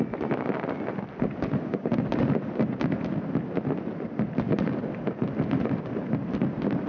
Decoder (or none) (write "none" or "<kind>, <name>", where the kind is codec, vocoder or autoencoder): none